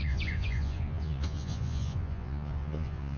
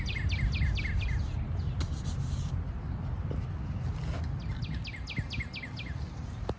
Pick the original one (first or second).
second